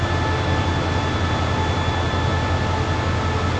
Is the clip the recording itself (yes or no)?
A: yes